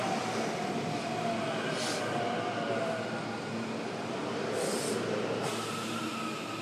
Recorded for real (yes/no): yes